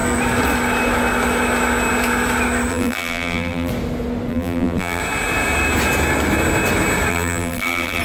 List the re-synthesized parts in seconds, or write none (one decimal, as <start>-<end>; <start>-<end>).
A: 2.7-3.7; 4.3-5.0; 7.1-8.0

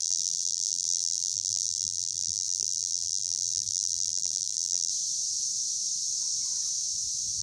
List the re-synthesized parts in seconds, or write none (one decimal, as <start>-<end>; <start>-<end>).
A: 0.0-4.9